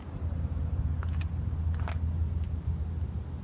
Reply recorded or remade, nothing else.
recorded